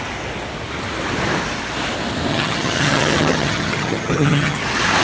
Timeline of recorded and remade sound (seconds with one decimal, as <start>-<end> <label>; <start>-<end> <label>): 0.0-2.3 recorded; 2.3-4.6 remade; 4.6-5.0 recorded